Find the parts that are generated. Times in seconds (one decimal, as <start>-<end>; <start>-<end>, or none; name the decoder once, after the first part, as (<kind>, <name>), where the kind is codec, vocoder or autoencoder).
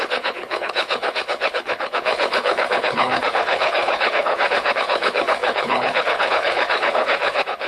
0.0-7.7 (codec, HILCodec)